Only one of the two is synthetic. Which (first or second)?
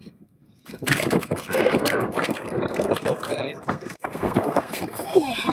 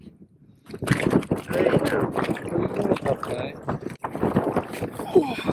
first